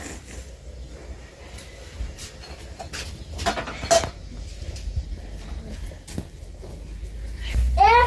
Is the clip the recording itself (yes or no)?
yes